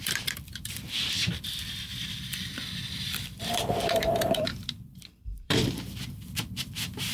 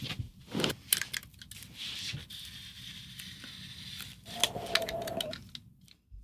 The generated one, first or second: first